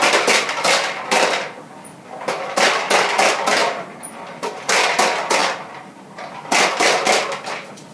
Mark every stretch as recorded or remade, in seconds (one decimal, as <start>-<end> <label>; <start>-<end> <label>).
0.0-7.9 recorded